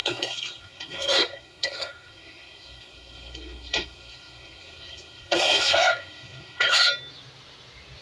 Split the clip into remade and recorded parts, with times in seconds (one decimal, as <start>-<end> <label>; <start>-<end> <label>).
0.0-6.9 remade; 6.9-8.0 recorded